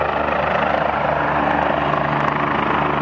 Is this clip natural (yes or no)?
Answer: yes